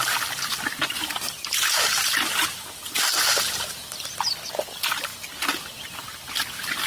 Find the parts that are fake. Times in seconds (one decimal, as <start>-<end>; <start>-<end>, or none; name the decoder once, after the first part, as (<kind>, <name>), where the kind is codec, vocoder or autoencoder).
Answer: none